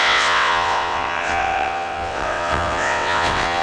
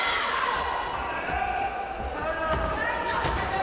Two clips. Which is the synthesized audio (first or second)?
first